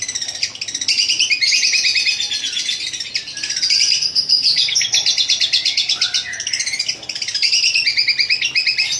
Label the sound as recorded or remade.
recorded